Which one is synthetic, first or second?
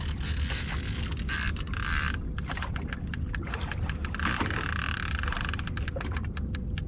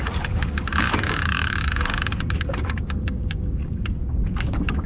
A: second